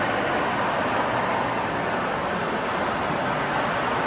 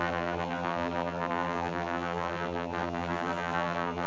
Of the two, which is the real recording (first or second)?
first